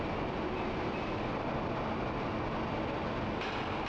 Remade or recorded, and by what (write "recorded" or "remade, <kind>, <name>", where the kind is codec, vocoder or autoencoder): recorded